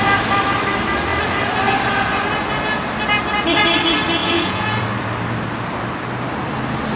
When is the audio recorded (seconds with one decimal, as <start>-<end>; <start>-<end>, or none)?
0.0-4.2; 4.8-7.0